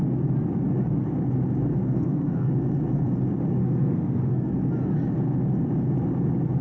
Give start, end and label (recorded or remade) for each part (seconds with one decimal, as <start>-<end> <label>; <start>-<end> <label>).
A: 0.0-1.8 recorded; 1.8-2.5 remade; 2.5-3.6 recorded; 3.6-4.5 remade; 4.5-6.6 recorded